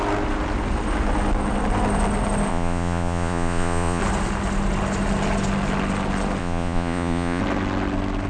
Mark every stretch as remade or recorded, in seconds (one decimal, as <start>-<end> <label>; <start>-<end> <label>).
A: 0.0-2.5 recorded; 2.5-4.0 remade; 4.0-6.4 recorded; 6.4-7.4 remade; 7.4-8.3 recorded